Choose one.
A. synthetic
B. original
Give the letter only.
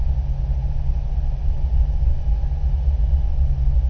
B